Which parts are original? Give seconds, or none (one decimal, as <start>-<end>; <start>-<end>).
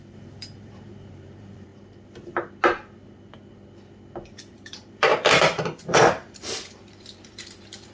1.7-4.4